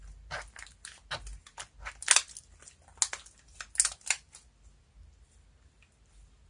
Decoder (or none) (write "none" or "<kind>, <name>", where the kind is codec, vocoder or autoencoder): none